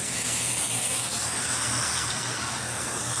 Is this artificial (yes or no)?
yes